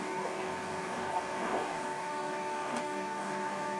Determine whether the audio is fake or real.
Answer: fake